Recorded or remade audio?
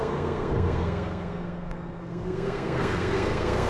remade